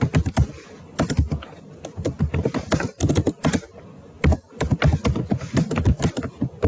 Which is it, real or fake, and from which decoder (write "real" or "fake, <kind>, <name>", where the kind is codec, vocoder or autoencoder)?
real